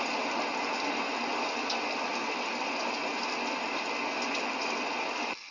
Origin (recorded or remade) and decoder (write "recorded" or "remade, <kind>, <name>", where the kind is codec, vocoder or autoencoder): recorded